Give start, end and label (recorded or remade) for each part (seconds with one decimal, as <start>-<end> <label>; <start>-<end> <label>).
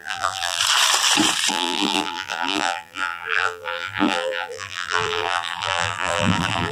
0.0-0.6 remade; 0.6-1.5 recorded; 1.5-6.7 remade